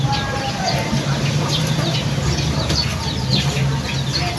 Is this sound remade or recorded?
recorded